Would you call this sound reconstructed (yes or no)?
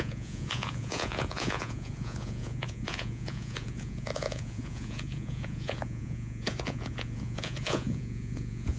yes